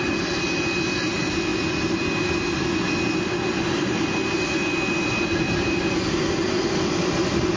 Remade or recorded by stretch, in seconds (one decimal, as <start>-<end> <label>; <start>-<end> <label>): 0.0-7.6 recorded